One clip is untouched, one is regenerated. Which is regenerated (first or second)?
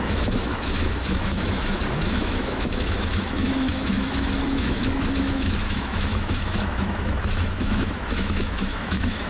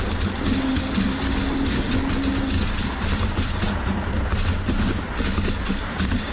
first